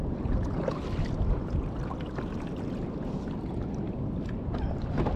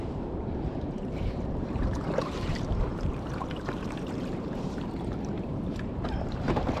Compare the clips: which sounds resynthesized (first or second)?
second